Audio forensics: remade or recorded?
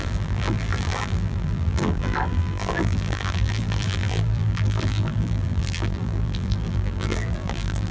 remade